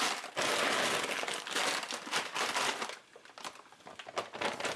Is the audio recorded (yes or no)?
yes